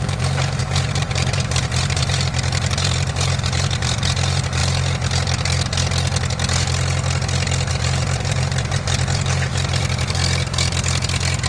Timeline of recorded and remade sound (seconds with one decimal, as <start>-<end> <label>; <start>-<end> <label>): 0.0-4.6 remade; 4.6-7.7 recorded; 7.7-10.2 remade; 10.2-11.5 recorded